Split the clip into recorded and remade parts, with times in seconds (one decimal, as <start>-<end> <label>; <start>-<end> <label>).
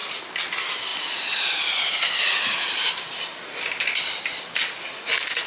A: 0.0-5.5 recorded